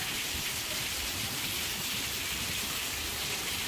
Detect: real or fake fake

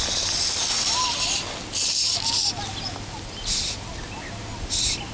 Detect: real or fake real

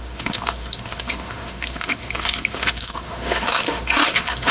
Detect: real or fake fake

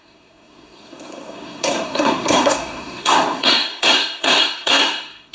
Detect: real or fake fake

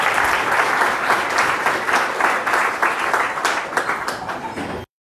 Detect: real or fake real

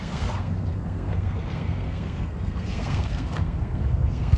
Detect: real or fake fake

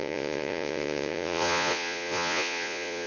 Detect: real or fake fake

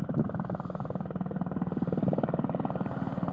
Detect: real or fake real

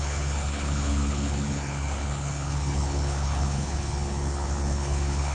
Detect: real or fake fake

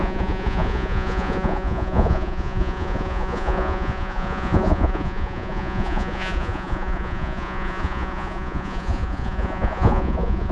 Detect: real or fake fake